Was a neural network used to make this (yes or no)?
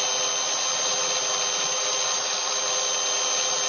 no